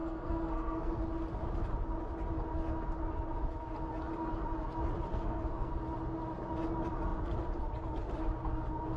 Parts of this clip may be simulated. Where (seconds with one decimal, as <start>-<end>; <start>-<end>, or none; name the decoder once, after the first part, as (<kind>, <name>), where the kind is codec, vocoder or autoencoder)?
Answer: 0.0-1.0 (codec, SNAC); 5.1-5.7

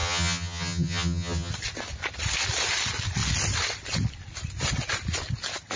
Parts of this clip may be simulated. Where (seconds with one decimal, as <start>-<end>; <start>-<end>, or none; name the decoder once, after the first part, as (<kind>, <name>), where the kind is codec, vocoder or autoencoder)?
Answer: 0.0-1.5 (vocoder, HiFi-GAN)

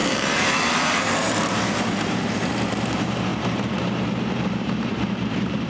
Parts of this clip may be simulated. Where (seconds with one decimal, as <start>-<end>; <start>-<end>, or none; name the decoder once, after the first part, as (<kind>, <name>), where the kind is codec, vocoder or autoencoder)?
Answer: 0.0-5.7 (vocoder, BigVGAN v2)